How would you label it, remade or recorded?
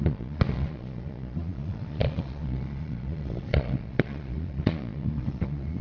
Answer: remade